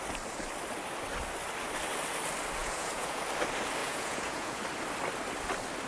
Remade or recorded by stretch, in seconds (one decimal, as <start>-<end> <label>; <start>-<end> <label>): 0.0-2.6 recorded; 2.6-3.2 remade; 3.2-3.8 recorded; 3.8-4.6 remade; 4.6-5.9 recorded